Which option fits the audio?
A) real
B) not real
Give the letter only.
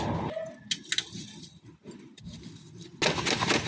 A